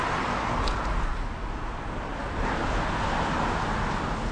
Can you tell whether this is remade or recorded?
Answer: recorded